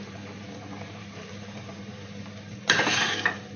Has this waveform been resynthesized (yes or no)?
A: yes